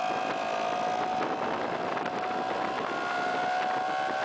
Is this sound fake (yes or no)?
no